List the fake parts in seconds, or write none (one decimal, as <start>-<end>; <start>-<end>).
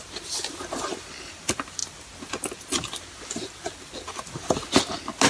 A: none